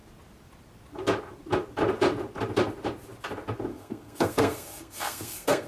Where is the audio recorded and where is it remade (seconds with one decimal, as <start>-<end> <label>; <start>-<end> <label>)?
0.0-3.7 recorded; 3.7-5.7 remade

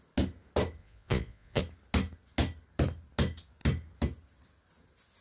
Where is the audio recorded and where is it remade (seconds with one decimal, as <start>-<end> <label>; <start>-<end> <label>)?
0.0-0.8 recorded; 0.8-1.6 remade; 1.6-5.2 recorded